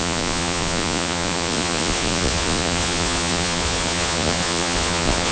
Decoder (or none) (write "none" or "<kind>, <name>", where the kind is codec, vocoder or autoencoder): vocoder, Vocos